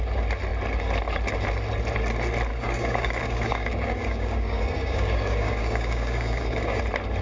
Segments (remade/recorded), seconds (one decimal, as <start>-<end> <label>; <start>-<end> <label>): 0.0-2.5 recorded; 2.5-6.8 remade; 6.8-7.2 recorded